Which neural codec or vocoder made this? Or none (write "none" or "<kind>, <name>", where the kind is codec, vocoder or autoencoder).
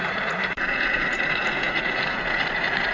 vocoder, Vocos